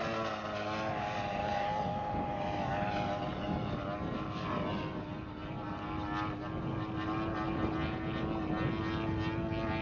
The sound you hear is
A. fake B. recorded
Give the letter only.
B